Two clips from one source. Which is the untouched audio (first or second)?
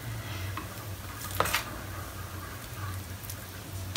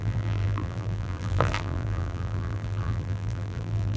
first